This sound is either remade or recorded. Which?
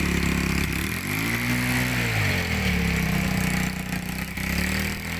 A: recorded